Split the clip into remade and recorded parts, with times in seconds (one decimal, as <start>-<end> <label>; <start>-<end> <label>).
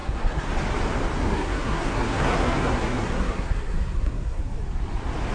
0.0-0.5 remade; 0.5-1.2 recorded; 1.2-4.4 remade; 4.4-5.3 recorded